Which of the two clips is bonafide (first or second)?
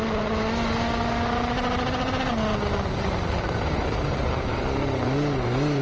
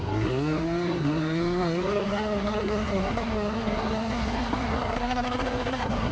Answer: first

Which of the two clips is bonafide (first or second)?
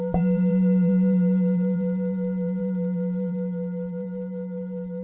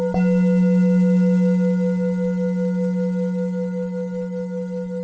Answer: second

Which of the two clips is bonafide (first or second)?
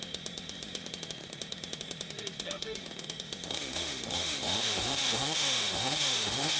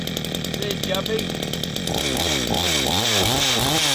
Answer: second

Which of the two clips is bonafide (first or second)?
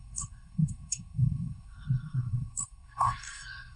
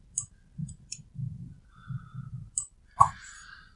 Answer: second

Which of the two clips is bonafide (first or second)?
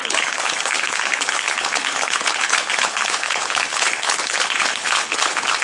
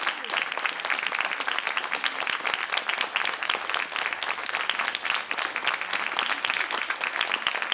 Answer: second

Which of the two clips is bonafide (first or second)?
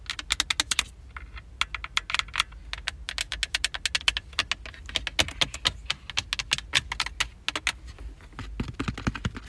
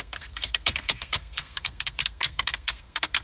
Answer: first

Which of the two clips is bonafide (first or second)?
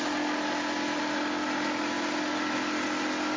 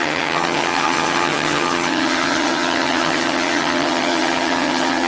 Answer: first